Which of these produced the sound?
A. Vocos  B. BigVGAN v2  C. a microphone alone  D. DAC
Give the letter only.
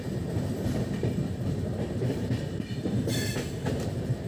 B